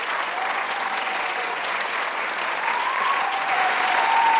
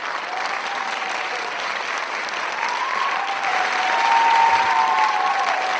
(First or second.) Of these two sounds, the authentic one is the second